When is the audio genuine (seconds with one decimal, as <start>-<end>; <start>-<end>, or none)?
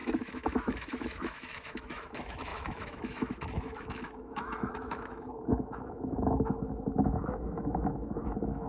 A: none